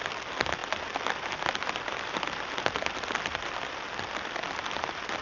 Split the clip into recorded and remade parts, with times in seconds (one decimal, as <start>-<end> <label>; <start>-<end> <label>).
0.0-5.2 recorded